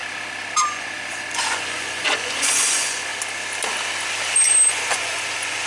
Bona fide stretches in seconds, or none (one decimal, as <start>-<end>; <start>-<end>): 0.0-0.7; 3.1-4.7